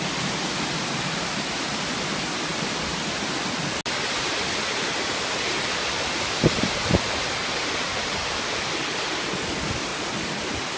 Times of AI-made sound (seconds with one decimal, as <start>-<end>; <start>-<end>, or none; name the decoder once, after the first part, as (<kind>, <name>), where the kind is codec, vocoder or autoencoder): none